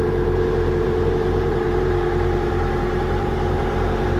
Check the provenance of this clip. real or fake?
fake